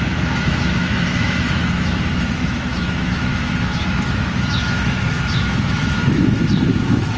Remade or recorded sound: remade